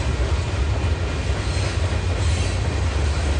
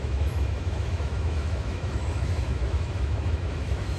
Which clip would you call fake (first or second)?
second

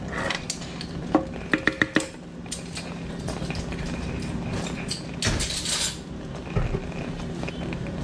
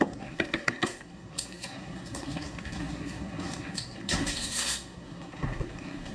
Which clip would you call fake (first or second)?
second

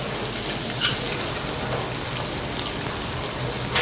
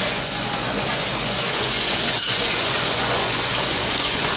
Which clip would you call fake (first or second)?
second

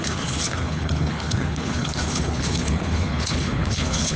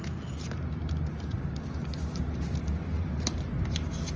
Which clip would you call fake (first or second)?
first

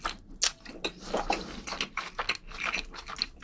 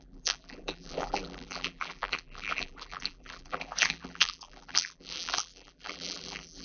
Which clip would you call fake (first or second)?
second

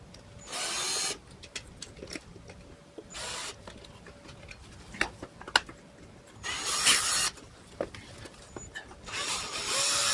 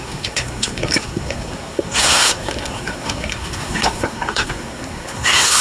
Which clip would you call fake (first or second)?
second